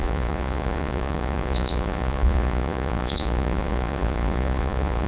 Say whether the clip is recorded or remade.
remade